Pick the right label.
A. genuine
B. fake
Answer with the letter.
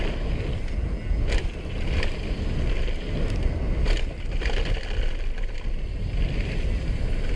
A